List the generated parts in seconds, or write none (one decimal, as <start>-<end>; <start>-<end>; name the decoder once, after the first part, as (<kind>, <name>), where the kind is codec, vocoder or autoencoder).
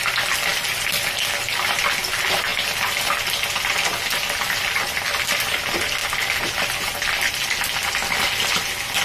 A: 0.5-1.7 (vocoder, BigVGAN v2); 2.5-5.6